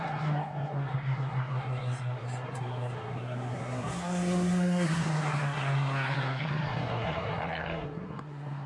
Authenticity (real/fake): fake